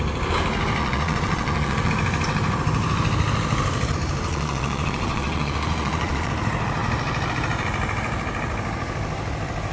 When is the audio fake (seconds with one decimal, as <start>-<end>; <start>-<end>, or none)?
0.8-1.9; 4.3-6.3